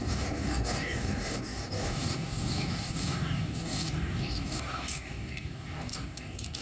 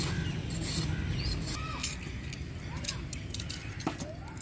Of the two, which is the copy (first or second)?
first